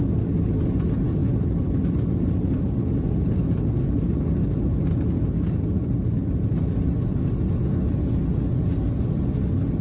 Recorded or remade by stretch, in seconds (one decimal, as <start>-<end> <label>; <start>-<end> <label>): 0.0-9.8 recorded